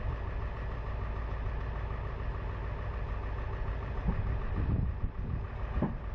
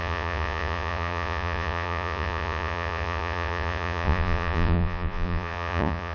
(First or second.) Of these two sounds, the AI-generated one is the second